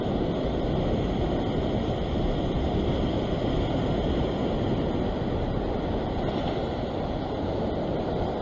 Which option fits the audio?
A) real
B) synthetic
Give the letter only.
A